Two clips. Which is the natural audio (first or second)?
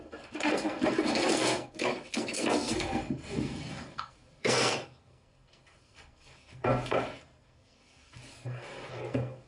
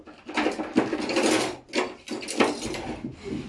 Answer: second